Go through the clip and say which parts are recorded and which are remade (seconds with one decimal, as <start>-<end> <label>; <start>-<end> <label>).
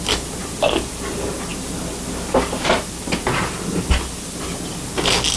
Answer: 0.0-0.4 recorded; 0.4-0.9 remade; 0.9-5.4 recorded